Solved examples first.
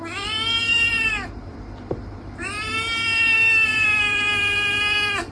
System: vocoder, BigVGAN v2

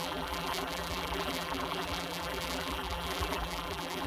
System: vocoder, BigVGAN v2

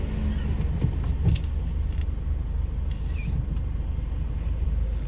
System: none